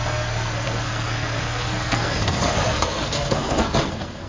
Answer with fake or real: fake